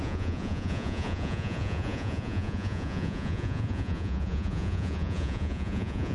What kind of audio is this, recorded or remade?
remade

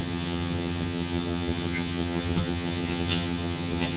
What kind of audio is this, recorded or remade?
remade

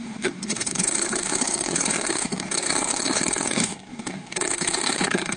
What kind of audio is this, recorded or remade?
remade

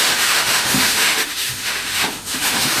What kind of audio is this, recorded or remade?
remade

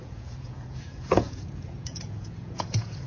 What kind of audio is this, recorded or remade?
remade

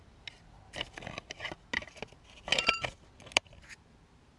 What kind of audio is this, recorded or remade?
recorded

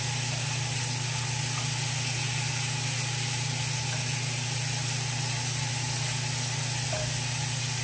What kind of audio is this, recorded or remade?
recorded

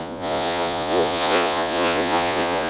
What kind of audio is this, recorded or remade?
remade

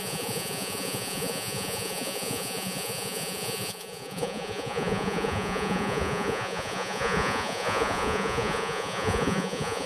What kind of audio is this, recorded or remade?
remade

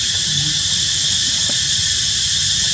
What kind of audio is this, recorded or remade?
recorded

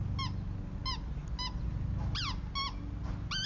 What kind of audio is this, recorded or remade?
recorded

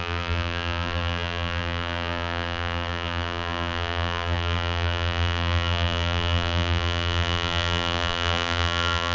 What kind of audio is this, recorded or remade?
remade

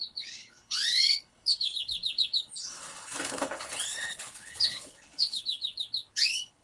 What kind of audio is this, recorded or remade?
remade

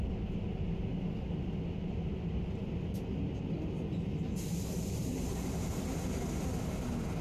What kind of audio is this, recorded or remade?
recorded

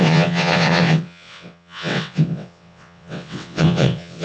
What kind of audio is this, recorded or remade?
remade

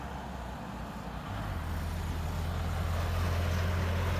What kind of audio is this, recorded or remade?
recorded